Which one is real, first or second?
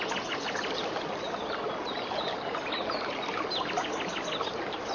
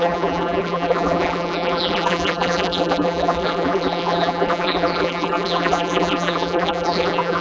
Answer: first